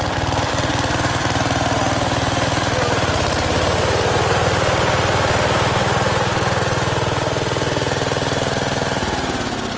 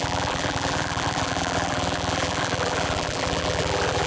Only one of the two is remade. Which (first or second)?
second